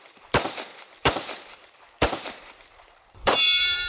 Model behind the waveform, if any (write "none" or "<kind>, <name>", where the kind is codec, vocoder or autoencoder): vocoder, BigVGAN v2